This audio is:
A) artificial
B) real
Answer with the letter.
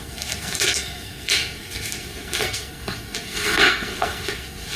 A